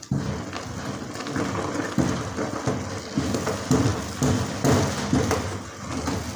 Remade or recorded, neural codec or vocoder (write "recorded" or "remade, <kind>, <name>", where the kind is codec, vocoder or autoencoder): recorded